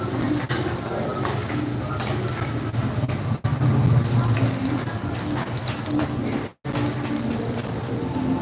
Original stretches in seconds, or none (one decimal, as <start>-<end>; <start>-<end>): 0.0-8.4